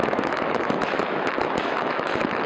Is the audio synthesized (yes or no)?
yes